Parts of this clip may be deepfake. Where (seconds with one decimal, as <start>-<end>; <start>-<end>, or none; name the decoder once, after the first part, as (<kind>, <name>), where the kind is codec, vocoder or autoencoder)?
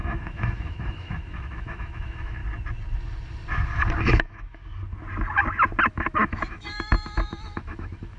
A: 0.0-2.4 (autoencoder, DAC-VAE); 4.0-4.6; 5.9-8.2